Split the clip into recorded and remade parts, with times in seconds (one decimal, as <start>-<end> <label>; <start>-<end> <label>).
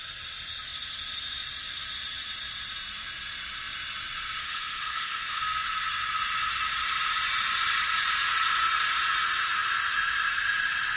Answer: 0.0-4.4 recorded; 4.4-5.4 remade; 5.4-11.0 recorded